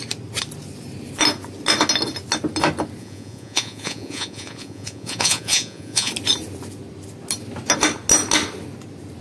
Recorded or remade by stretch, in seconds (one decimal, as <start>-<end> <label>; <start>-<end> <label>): 0.0-3.0 recorded; 3.0-6.1 remade; 6.1-9.2 recorded